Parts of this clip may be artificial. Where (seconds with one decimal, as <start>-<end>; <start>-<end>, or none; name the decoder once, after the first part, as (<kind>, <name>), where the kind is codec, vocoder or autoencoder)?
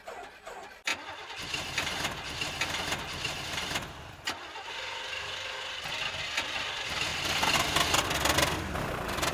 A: none